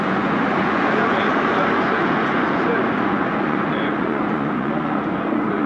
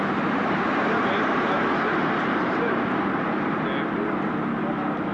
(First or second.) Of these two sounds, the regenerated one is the first